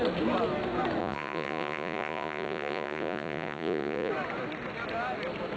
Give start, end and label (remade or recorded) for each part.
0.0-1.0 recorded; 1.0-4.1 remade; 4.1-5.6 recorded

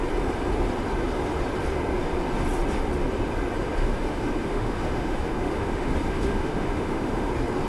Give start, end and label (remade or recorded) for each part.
0.0-3.8 recorded; 3.8-7.3 remade; 7.3-7.7 recorded